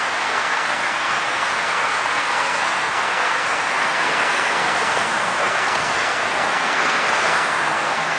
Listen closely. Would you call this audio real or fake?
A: fake